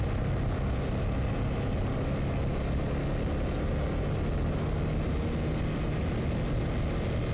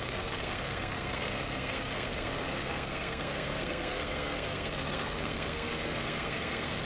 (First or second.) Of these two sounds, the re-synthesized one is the second